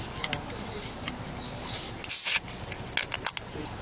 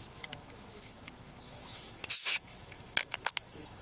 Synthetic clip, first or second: second